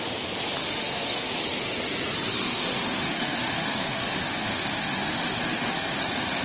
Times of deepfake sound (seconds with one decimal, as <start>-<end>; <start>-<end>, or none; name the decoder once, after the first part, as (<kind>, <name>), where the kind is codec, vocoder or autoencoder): 0.6-1.3 (autoencoder, DAC-VAE); 2.3-6.0